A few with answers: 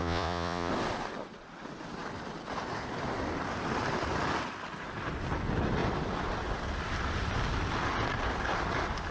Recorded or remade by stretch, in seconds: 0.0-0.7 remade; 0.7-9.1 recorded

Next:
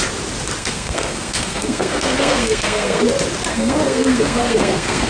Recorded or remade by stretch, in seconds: 0.0-0.6 recorded; 0.6-3.0 remade; 3.0-3.5 recorded; 3.5-5.1 remade

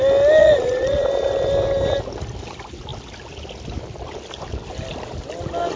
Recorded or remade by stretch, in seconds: 0.0-0.4 recorded; 0.4-1.1 remade; 1.1-5.8 recorded

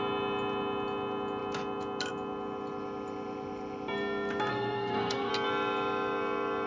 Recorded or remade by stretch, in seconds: 0.0-4.5 recorded; 4.5-5.3 remade; 5.3-6.7 recorded

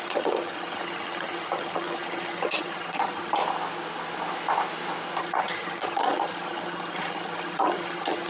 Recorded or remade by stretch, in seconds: 0.0-3.4 remade; 3.4-5.2 recorded; 5.2-8.3 remade

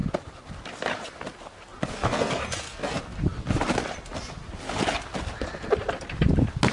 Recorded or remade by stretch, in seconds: 0.0-6.7 recorded

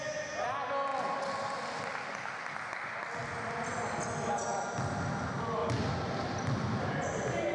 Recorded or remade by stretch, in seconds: 0.0-0.9 recorded; 0.9-2.6 remade; 2.6-5.6 recorded; 5.6-6.9 remade; 6.9-7.5 recorded